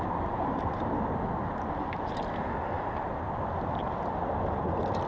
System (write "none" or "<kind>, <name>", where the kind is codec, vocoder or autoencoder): none